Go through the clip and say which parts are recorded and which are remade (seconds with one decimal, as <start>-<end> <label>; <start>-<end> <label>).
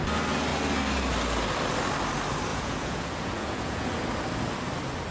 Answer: 0.0-2.5 recorded; 2.5-3.9 remade; 3.9-5.1 recorded